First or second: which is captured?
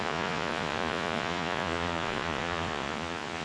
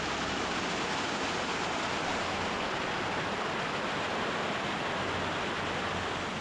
second